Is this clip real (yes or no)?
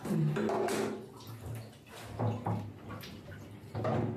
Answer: yes